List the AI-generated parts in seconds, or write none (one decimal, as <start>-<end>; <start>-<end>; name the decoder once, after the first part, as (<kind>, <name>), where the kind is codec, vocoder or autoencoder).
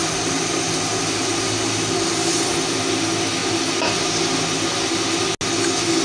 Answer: none